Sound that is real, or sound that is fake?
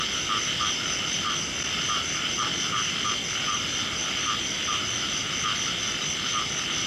real